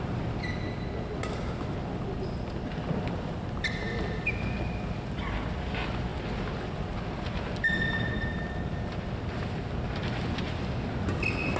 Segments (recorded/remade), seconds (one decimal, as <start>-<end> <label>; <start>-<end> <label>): 0.0-11.6 recorded